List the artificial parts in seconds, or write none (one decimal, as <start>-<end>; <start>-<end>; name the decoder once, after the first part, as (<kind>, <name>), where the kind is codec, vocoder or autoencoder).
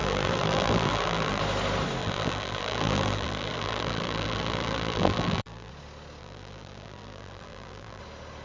0.0-1.4 (vocoder, BigVGAN v2); 2.0-5.7; 6.2-8.0